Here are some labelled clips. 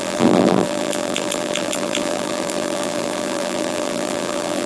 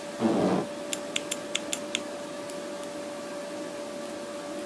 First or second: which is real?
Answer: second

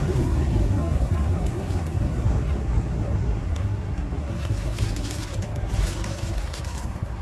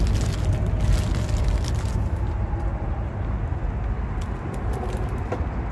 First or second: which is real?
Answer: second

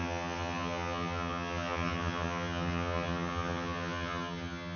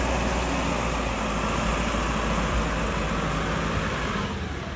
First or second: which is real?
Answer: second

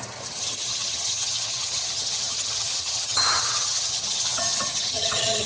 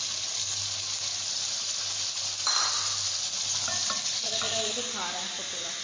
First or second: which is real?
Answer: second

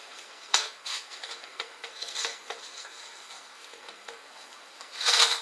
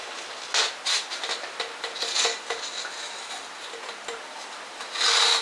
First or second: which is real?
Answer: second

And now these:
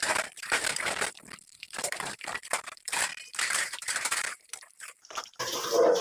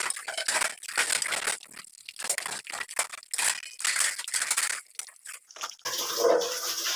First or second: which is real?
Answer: second